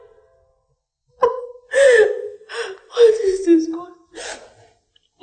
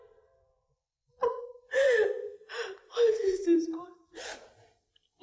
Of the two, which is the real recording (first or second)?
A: first